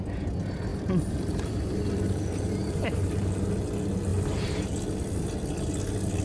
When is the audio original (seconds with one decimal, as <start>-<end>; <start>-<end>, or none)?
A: 0.0-0.7; 3.5-4.1; 4.7-6.2

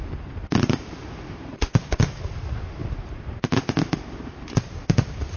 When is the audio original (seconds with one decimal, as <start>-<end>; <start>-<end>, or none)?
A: none

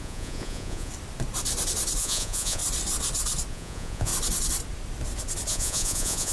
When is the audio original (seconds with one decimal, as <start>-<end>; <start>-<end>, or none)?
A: 0.9-2.0; 2.6-3.5; 4.1-5.5

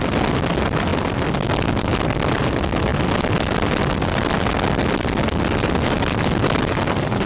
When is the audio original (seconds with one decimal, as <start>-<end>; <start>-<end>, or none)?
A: 0.0-7.2

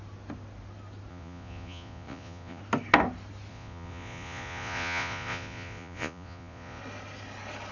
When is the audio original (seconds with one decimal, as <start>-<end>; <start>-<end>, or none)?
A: 0.0-1.1; 2.6-3.5; 6.8-7.7

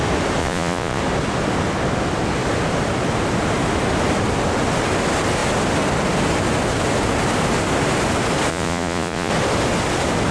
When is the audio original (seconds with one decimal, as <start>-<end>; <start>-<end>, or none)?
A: 0.0-0.4; 1.0-8.5; 9.3-10.3